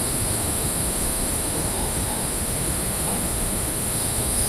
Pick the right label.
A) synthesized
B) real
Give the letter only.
A